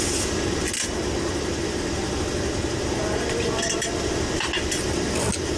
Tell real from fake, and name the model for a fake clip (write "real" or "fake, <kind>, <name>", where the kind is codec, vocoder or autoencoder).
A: real